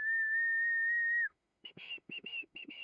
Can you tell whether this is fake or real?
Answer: fake